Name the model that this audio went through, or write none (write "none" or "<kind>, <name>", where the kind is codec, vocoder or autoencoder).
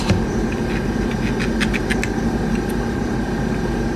none